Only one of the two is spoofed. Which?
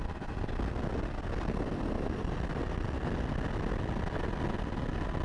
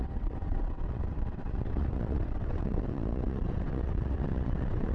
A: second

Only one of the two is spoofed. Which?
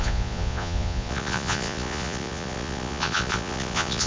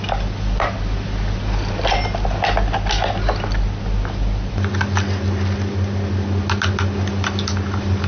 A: first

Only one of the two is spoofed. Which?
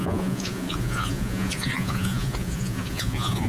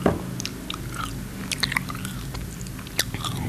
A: first